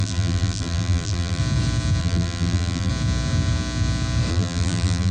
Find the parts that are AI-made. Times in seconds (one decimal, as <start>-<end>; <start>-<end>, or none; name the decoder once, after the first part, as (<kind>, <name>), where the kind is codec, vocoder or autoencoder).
0.0-1.4 (vocoder, BigVGAN v2); 2.0-2.9; 4.3-5.1